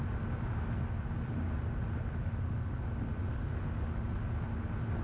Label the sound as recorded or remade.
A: recorded